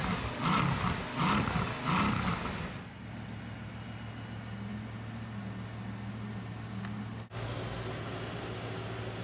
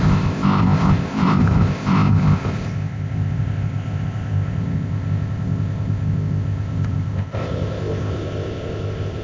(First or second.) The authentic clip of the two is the first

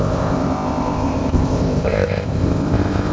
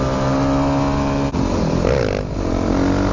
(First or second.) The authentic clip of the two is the second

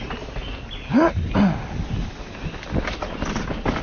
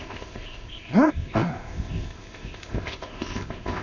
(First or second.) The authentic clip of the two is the first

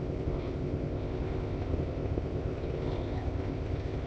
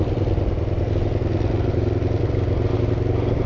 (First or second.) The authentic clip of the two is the second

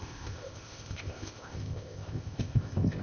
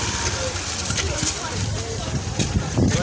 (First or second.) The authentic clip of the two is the second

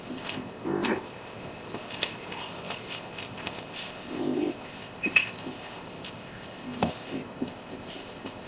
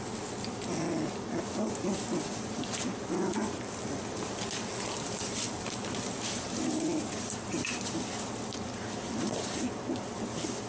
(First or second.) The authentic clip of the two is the second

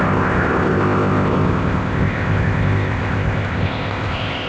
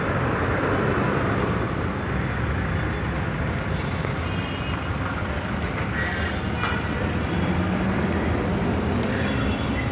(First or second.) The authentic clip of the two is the second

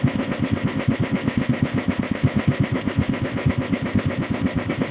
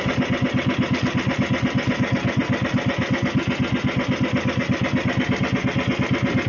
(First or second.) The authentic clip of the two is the second